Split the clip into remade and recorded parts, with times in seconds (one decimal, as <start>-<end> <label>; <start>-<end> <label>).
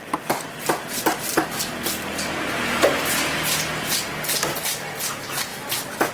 0.0-6.1 recorded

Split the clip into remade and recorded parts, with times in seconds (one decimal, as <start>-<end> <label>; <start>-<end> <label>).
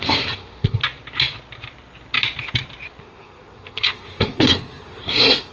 0.0-0.8 remade; 0.8-3.0 recorded; 3.0-5.5 remade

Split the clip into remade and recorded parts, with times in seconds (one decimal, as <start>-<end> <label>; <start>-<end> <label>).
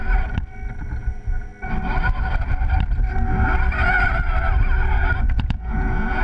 0.0-1.0 recorded; 1.0-1.5 remade; 1.5-5.2 recorded; 5.2-6.2 remade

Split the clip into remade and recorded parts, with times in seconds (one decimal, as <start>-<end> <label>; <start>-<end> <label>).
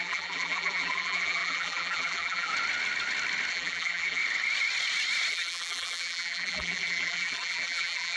0.0-2.5 remade; 2.5-3.5 recorded; 3.5-4.2 remade; 4.2-5.3 recorded; 5.3-8.2 remade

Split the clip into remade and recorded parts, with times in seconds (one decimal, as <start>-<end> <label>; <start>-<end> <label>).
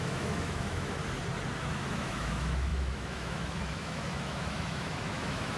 0.0-1.0 remade; 1.0-1.6 recorded; 1.6-5.6 remade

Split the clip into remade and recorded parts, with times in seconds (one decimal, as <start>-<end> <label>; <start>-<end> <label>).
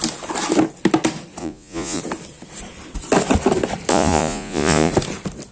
0.0-1.4 recorded; 1.4-2.0 remade; 2.0-3.9 recorded; 3.9-4.9 remade; 4.9-5.5 recorded